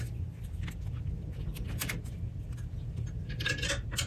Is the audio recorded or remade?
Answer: recorded